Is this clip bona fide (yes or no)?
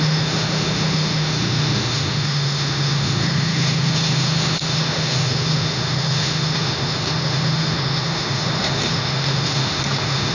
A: no